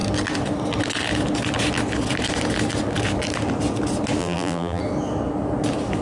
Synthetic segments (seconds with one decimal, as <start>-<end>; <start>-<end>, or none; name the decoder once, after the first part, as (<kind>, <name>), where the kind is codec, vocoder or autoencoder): 4.2-4.8 (vocoder, BigVGAN v2)